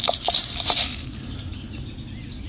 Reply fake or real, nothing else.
real